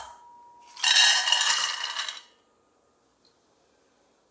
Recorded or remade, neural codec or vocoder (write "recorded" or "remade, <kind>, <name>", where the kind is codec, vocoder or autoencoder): recorded